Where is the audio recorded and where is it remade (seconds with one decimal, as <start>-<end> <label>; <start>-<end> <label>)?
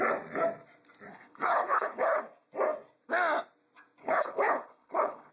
0.0-1.1 recorded; 1.1-2.2 remade; 2.2-4.0 recorded; 4.0-5.3 remade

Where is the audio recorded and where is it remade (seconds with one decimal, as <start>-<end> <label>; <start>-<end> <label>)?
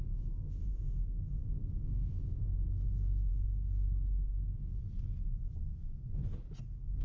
0.0-4.8 remade; 4.8-7.0 recorded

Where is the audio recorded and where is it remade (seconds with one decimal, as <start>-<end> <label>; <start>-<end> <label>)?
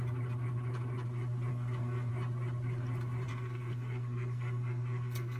0.0-1.5 recorded; 1.5-2.1 remade; 2.1-3.3 recorded; 3.3-5.4 remade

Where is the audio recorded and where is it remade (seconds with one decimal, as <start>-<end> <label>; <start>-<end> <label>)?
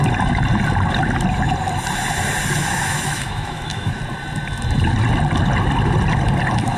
0.0-2.6 recorded; 2.6-4.0 remade; 4.0-6.8 recorded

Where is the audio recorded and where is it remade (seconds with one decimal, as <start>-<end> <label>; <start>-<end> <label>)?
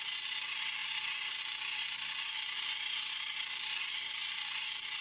0.0-5.0 recorded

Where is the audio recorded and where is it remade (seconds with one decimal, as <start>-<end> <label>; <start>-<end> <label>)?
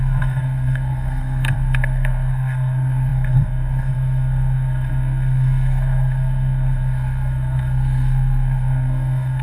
0.0-9.4 remade